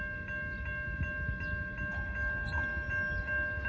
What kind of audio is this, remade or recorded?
recorded